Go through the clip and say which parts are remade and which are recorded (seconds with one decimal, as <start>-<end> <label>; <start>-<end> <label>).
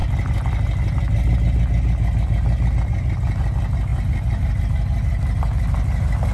0.0-3.9 recorded; 3.9-4.6 remade; 4.6-6.3 recorded